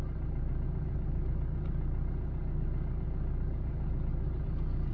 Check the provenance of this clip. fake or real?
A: real